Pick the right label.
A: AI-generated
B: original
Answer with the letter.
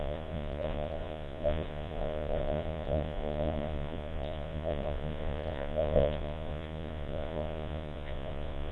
A